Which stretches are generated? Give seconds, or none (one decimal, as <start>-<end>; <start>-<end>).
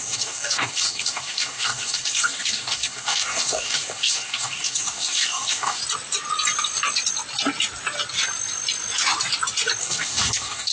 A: 0.0-5.8; 9.8-10.7